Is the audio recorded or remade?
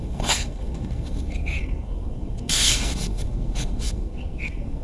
remade